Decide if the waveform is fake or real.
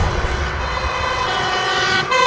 fake